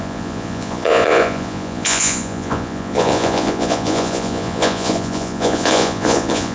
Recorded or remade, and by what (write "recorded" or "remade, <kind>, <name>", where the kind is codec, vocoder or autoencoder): remade, vocoder, Vocos